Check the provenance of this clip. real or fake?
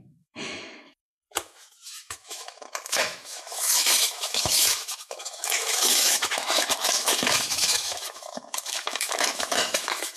fake